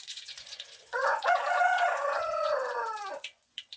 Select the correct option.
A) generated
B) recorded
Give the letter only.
A